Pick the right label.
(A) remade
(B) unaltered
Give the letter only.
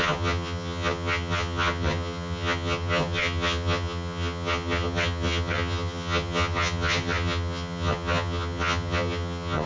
A